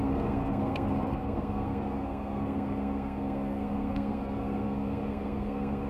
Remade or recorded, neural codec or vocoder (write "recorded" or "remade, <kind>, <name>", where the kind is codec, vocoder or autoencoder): remade, codec, SNAC